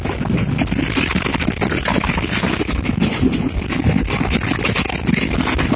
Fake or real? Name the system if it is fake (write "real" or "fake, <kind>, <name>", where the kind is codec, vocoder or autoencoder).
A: real